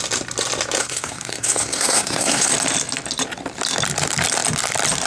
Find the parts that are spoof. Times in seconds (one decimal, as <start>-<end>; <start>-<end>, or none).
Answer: 0.8-2.5